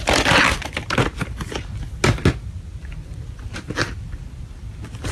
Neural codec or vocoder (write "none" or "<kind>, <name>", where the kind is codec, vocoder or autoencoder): none